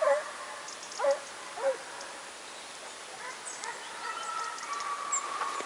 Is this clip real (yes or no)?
yes